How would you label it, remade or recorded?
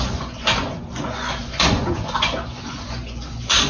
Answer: remade